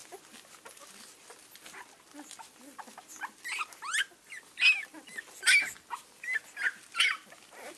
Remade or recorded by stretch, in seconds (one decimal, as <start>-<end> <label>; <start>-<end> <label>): 0.0-7.8 recorded